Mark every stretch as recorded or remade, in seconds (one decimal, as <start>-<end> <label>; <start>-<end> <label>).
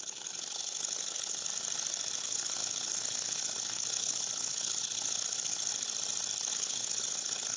0.0-1.5 remade; 1.5-2.2 recorded; 2.2-5.7 remade; 5.7-6.5 recorded; 6.5-7.6 remade